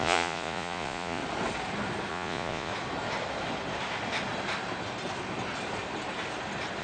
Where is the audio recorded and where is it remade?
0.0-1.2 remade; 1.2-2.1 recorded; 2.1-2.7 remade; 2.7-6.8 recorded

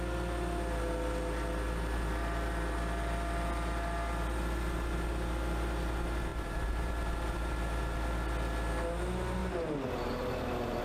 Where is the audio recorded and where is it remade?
0.0-6.3 recorded; 6.3-6.9 remade; 6.9-9.4 recorded; 9.4-10.8 remade

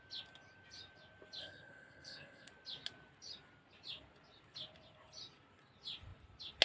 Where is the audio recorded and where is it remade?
0.0-1.4 recorded; 1.4-2.5 remade; 2.5-6.6 recorded